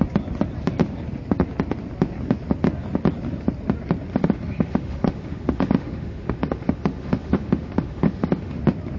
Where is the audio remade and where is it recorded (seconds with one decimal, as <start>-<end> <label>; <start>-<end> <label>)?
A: 0.0-4.1 recorded; 4.1-8.6 remade; 8.6-9.0 recorded